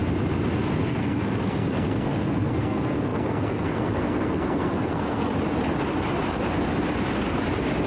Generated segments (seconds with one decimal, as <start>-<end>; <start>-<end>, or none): 0.9-5.3